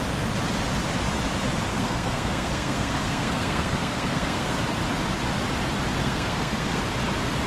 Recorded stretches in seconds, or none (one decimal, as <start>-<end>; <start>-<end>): 0.0-1.7; 4.6-6.0; 6.8-7.5